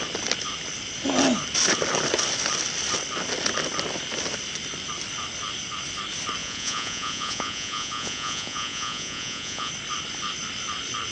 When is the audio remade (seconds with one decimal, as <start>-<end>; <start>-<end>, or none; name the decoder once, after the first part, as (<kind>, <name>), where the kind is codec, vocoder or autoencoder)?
6.4-9.7 (vocoder, Vocos)